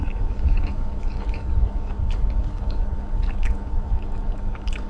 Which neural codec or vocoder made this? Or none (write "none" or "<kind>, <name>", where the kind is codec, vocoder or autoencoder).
codec, DAC